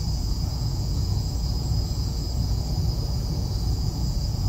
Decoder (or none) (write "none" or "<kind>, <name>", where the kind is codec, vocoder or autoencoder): vocoder, Vocos